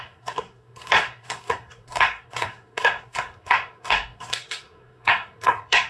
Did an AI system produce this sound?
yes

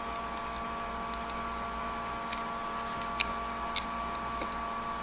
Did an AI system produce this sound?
no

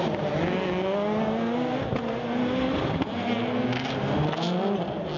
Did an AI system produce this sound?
no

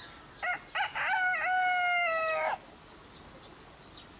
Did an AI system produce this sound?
no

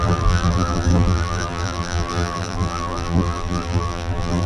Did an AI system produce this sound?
yes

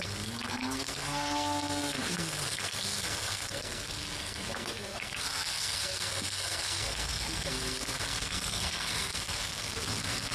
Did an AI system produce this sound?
yes